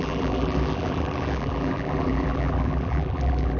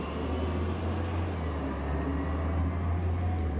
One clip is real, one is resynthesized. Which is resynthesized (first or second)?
first